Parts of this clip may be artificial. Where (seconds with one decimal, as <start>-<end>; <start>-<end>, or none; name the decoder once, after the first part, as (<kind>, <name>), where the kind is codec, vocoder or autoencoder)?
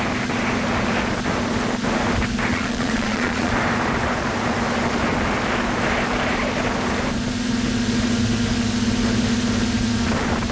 2.5-3.5 (vocoder, Vocos)